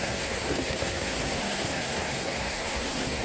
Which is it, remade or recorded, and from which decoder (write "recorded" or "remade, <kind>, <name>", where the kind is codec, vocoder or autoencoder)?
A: remade, codec, SNAC